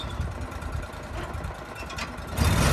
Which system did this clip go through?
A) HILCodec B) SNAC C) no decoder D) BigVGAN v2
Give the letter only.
C